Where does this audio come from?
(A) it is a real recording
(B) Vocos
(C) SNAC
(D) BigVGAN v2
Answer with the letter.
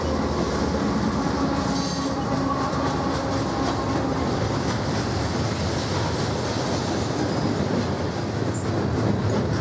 A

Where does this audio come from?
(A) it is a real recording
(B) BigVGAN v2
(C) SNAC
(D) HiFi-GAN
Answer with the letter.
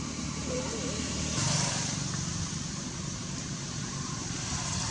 B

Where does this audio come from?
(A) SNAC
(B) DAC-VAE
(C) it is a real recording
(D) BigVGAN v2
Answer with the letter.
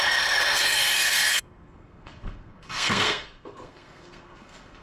A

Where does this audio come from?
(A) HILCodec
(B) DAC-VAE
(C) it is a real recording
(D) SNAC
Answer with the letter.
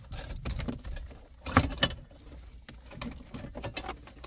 C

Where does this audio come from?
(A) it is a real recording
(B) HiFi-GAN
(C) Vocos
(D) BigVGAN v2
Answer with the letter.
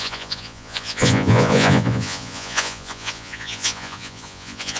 C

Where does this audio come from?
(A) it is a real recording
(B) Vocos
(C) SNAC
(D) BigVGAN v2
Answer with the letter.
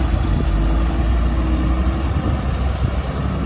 A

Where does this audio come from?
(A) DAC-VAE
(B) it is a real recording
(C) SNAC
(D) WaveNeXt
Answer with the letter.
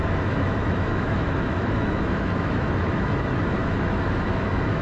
A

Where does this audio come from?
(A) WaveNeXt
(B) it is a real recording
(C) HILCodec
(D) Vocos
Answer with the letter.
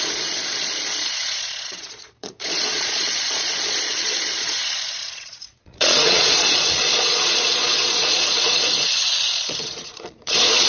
D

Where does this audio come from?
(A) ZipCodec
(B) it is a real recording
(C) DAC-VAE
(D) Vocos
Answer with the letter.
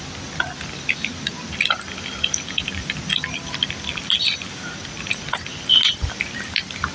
B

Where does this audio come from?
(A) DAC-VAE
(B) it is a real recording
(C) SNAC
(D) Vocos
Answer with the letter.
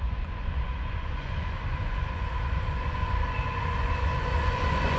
D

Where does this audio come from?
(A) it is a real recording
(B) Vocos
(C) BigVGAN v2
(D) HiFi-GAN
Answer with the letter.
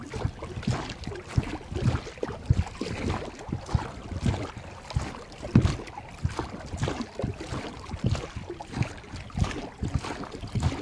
A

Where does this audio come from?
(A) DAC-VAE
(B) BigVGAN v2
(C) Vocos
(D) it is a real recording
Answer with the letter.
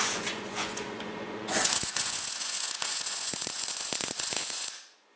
C